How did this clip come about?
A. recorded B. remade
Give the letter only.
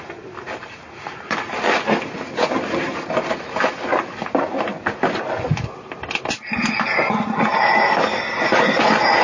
A